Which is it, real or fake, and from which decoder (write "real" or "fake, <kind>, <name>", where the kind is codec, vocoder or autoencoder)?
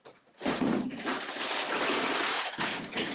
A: fake, vocoder, Vocos